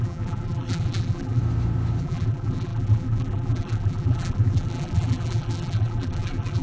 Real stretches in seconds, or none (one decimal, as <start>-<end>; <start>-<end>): 1.4-2.0